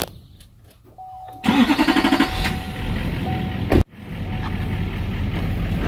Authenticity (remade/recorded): recorded